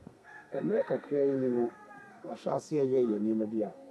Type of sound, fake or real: fake